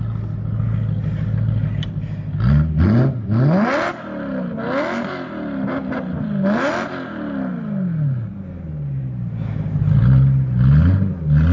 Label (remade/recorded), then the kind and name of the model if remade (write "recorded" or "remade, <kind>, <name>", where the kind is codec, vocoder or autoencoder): recorded